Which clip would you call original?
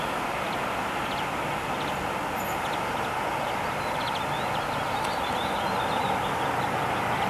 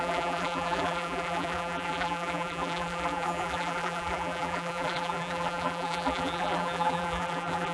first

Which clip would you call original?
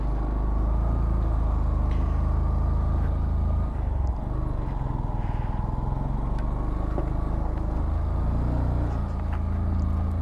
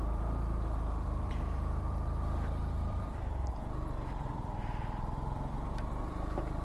first